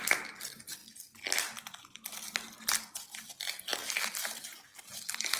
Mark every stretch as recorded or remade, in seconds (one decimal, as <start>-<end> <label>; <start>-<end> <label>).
0.0-5.4 recorded

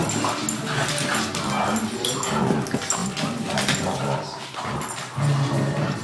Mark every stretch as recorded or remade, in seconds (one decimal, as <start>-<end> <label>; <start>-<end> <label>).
0.0-6.0 recorded

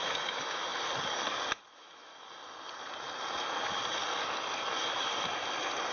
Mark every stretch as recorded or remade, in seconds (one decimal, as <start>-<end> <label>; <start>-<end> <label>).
0.0-0.7 remade; 0.7-1.7 recorded; 1.7-2.1 remade; 2.1-5.9 recorded

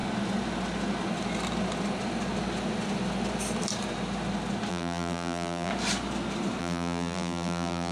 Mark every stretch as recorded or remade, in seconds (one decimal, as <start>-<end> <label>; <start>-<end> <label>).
0.0-4.7 recorded; 4.7-5.7 remade; 5.7-6.6 recorded; 6.6-7.9 remade

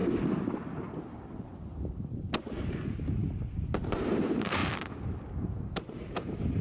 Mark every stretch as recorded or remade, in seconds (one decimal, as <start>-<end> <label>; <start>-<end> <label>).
0.0-4.0 recorded; 4.0-4.6 remade; 4.6-5.3 recorded; 5.3-6.6 remade

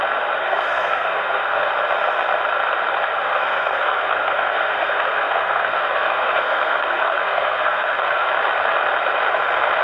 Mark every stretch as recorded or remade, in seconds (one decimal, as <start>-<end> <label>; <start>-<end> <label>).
0.0-0.4 recorded; 0.4-1.7 remade; 1.7-3.2 recorded; 3.2-8.3 remade; 8.3-9.8 recorded

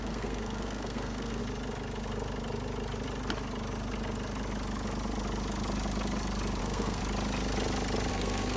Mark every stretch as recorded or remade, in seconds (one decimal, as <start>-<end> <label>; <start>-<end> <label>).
0.0-1.4 remade; 1.4-6.6 recorded; 6.6-7.0 remade; 7.0-8.1 recorded; 8.1-8.6 remade